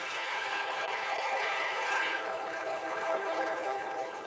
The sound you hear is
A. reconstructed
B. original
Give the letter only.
A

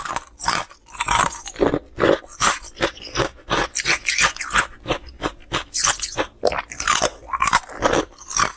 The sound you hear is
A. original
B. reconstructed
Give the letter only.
A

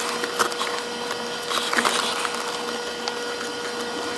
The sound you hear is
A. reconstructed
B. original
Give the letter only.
B